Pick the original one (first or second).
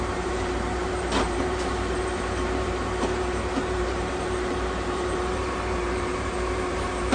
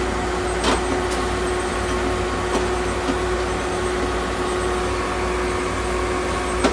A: second